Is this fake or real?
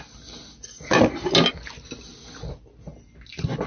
real